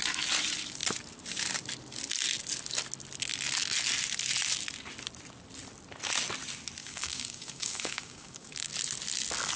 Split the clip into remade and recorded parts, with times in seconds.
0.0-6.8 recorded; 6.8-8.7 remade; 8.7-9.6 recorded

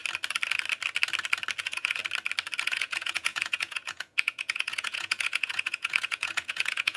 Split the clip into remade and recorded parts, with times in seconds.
0.0-1.6 recorded; 1.6-2.0 remade; 2.0-2.6 recorded; 2.6-7.0 remade

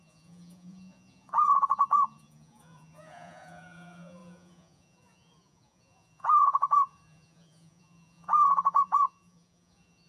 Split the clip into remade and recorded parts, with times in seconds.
0.0-10.1 remade

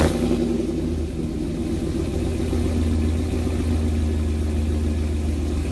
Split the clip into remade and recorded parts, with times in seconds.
0.0-5.7 recorded

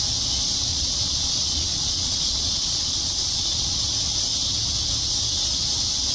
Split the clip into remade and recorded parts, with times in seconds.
0.0-0.7 recorded; 0.7-3.8 remade; 3.8-6.1 recorded

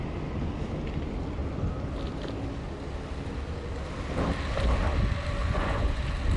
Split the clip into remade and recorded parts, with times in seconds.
0.0-5.4 recorded; 5.4-6.0 remade; 6.0-6.4 recorded